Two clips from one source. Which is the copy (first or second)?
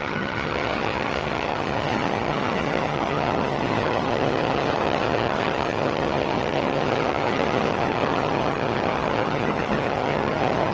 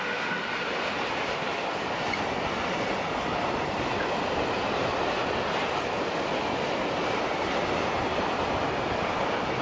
first